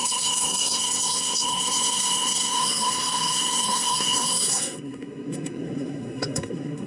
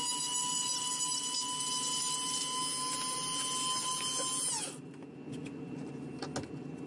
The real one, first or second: second